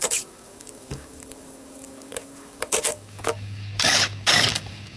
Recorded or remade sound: remade